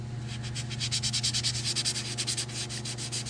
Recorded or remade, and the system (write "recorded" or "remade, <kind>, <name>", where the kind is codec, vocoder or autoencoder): recorded